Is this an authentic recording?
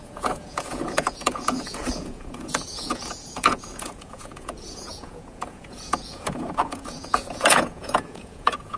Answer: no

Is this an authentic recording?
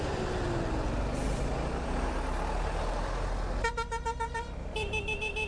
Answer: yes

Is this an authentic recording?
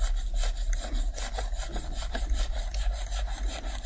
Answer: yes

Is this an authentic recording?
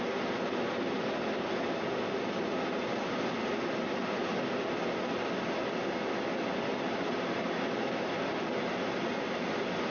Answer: yes